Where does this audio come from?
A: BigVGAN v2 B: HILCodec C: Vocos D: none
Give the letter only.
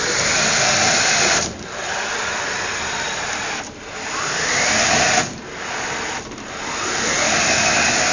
D